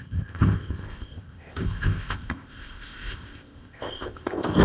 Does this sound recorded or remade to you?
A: remade